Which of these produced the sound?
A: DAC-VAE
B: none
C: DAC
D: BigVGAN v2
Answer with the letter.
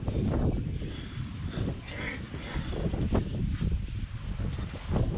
B